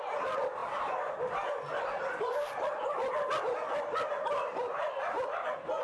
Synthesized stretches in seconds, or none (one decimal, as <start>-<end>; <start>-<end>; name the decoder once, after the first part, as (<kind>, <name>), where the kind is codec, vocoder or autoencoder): none